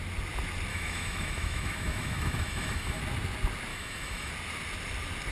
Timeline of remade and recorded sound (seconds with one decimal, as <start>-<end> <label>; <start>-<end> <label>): 0.0-0.7 recorded; 0.7-3.0 remade; 3.0-3.7 recorded; 3.7-4.3 remade; 4.3-5.3 recorded